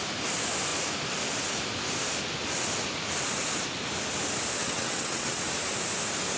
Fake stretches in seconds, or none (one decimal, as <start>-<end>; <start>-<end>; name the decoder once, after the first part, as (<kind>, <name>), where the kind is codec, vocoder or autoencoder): 4.6-5.4 (vocoder, WaveNeXt)